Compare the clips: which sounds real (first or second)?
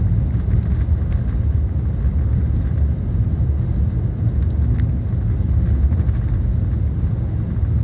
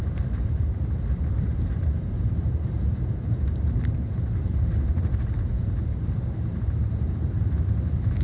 first